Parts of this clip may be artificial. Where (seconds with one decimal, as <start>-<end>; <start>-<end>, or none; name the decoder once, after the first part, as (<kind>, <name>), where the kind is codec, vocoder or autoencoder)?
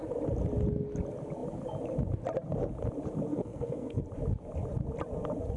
3.3-4.0 (codec, SNAC)